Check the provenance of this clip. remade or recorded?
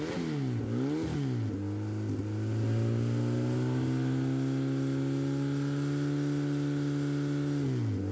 recorded